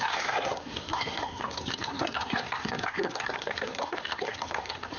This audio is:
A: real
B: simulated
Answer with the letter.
B